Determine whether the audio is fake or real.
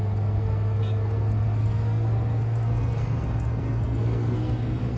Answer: fake